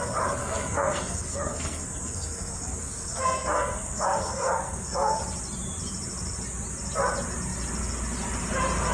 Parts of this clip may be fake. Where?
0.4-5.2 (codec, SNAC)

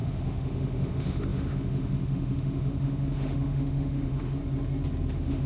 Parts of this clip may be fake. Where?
0.0-4.4 (autoencoder, DAC-VAE); 5.1-5.5

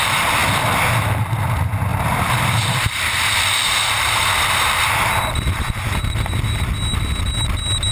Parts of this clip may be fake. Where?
1.9-6.6 (vocoder, BigVGAN v2)

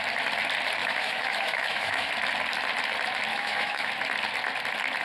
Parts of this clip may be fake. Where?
0.8-2.1 (autoencoder, DAC-VAE); 3.3-3.9

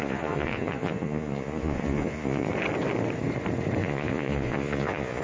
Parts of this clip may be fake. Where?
0.0-2.5 (vocoder, Vocos); 3.8-5.2

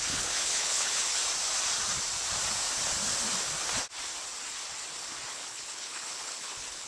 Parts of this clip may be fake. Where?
0.0-1.2 (codec, HILCodec); 5.3-6.9